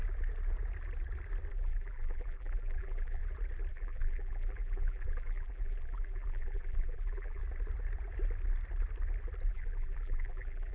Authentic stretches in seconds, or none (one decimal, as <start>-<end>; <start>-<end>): 0.0-1.5; 3.2-3.7; 7.4-9.5